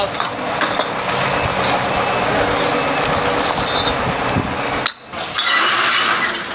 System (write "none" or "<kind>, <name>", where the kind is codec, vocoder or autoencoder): none